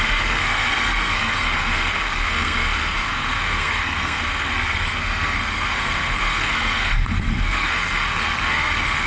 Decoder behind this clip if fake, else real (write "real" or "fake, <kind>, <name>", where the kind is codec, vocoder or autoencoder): fake, codec, SNAC